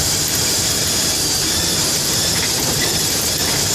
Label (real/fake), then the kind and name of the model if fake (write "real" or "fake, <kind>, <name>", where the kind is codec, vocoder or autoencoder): fake, vocoder, BigVGAN v2